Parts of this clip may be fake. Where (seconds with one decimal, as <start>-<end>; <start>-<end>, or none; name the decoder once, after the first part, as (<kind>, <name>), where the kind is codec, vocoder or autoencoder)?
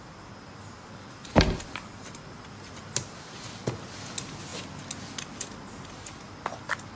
none